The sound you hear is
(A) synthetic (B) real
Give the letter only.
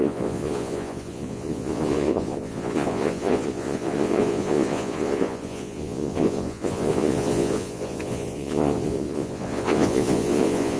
A